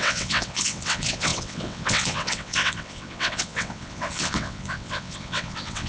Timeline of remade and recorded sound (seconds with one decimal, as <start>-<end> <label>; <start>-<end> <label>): 0.0-5.9 remade